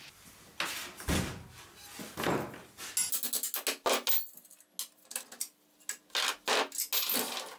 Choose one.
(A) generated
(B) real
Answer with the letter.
B